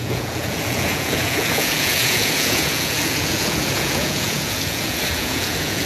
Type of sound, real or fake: fake